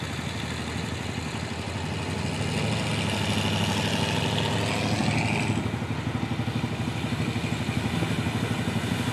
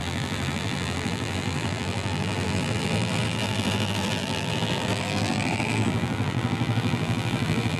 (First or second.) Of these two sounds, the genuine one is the first